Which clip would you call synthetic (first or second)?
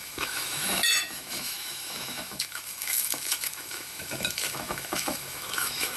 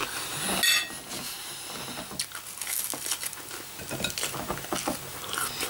first